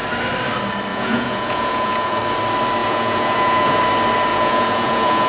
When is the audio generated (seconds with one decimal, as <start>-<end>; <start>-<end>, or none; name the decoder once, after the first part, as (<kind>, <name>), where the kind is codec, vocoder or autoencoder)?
0.9-2.2 (vocoder, Vocos); 2.8-3.8; 4.3-5.3